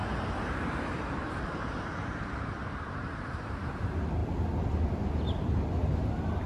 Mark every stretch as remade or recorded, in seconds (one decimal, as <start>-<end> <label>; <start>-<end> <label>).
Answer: 0.0-3.8 remade; 3.8-6.5 recorded